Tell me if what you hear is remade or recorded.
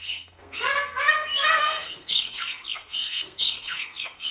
remade